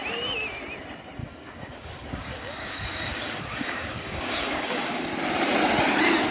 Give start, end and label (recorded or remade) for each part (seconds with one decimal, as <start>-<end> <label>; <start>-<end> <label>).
0.0-1.2 recorded; 1.2-5.0 remade; 5.0-6.3 recorded